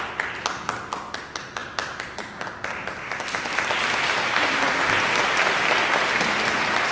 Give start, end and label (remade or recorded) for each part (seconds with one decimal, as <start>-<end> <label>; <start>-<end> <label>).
0.0-6.9 recorded